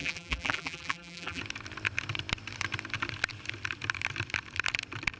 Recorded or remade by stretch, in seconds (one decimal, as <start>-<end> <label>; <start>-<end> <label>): 0.0-1.4 remade; 1.4-5.2 recorded